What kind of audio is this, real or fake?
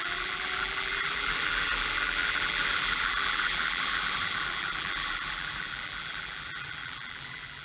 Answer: fake